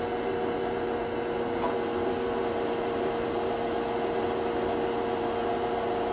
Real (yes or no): yes